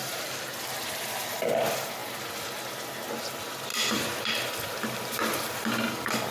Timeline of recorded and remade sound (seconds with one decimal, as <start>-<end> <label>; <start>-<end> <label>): 0.0-1.4 remade; 1.4-3.7 recorded; 3.7-4.5 remade; 4.5-6.3 recorded